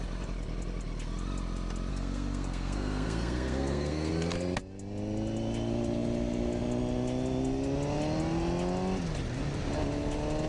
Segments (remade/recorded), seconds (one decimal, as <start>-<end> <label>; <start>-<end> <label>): 0.0-1.9 recorded; 1.9-4.1 remade; 4.1-10.5 recorded